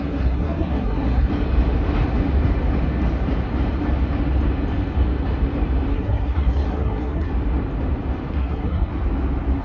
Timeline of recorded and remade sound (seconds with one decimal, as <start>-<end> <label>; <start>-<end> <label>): 0.0-1.3 remade; 1.3-5.9 recorded; 5.9-7.3 remade; 7.3-8.3 recorded; 8.3-8.9 remade; 8.9-9.6 recorded